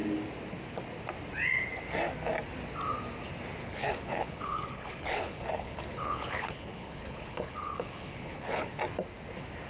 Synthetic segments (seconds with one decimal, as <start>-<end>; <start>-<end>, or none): 3.6-8.8